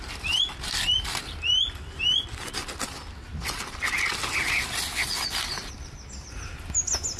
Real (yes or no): yes